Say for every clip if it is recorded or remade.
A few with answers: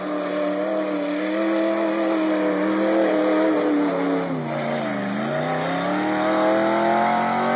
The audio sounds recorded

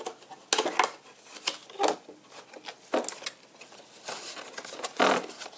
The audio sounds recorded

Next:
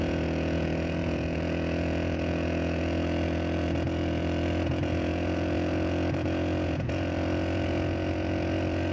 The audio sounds remade